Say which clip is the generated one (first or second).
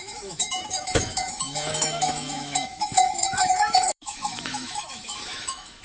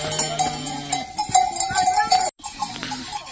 first